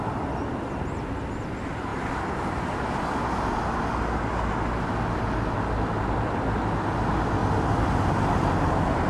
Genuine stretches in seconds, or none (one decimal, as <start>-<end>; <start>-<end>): 0.0-9.1